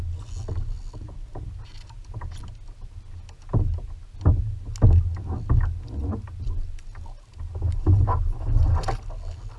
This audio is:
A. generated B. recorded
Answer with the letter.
B